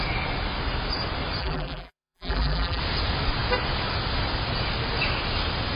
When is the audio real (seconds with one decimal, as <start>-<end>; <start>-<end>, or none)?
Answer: 0.0-1.4; 2.8-5.8